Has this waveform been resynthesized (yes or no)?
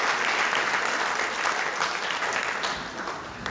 no